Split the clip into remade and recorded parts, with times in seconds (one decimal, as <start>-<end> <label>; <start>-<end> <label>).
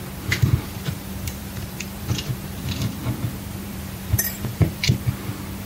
0.0-3.0 remade; 3.0-3.6 recorded; 3.6-4.8 remade; 4.8-5.7 recorded